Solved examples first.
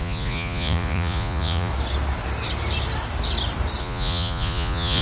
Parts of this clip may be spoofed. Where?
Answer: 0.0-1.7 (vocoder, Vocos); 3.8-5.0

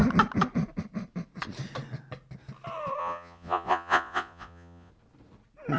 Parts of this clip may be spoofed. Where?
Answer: 3.0-4.9 (vocoder, Vocos)

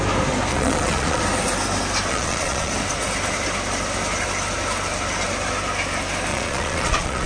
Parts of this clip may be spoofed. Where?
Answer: 0.5-1.2 (vocoder, Vocos); 2.1-2.7; 6.3-7.3

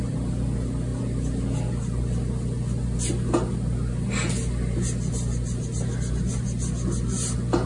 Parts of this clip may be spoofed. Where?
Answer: none

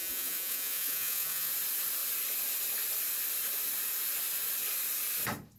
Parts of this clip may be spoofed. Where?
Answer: 0.0-1.5 (vocoder, Vocos)